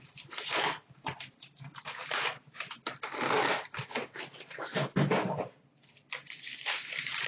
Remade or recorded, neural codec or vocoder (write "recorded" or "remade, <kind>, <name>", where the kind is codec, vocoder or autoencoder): recorded